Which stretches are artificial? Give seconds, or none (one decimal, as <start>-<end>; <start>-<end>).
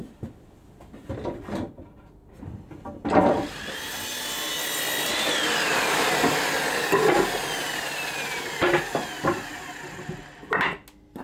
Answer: 2.2-3.7